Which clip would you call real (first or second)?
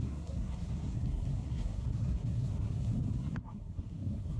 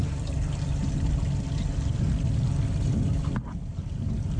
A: second